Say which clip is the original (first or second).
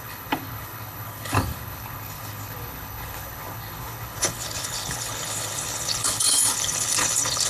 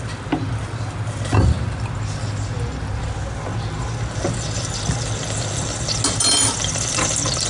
second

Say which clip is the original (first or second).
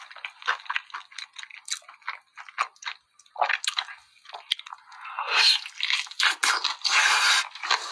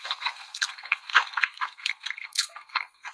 first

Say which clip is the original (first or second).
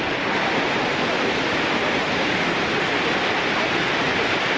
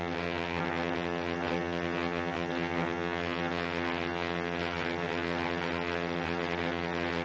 first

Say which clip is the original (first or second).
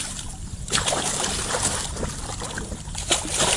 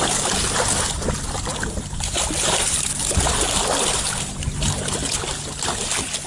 second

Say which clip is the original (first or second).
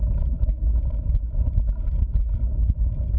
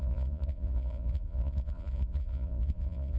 first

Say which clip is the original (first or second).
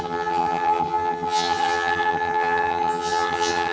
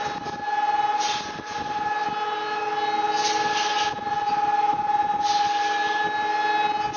second